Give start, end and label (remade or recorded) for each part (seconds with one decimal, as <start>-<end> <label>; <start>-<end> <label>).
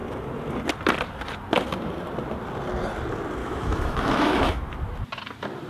0.0-3.4 recorded; 3.4-4.7 remade; 4.7-5.7 recorded